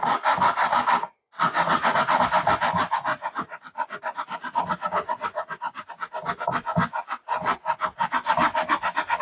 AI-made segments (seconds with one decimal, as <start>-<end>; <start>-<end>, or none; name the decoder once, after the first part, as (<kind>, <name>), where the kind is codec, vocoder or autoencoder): 1.3-2.2 (vocoder, Vocos); 3.1-5.9